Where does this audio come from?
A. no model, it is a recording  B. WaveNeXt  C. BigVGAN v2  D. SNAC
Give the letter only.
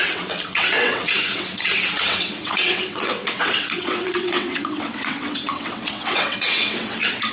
B